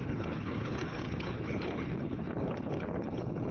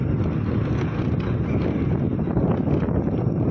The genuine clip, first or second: second